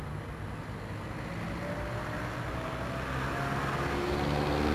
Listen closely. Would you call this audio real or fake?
real